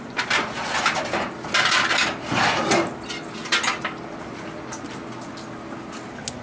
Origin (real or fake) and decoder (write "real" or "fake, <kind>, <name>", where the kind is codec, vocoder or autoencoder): real